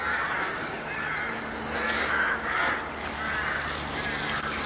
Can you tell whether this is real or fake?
real